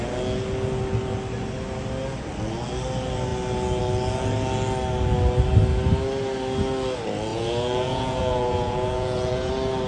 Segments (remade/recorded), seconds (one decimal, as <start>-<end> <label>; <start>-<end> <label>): 0.0-7.3 recorded; 7.3-9.5 remade; 9.5-9.9 recorded